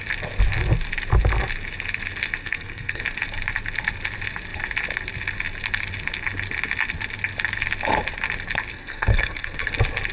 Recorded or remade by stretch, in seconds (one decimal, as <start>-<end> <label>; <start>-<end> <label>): 0.0-2.4 recorded; 2.4-3.0 remade; 3.0-8.7 recorded; 8.7-9.7 remade; 9.7-10.1 recorded